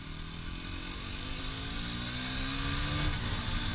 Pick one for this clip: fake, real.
real